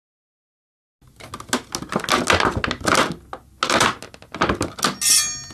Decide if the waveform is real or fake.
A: real